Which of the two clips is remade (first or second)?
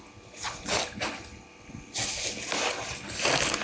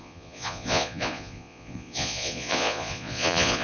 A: second